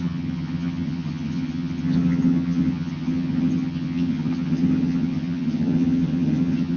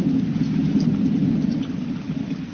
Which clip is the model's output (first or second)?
first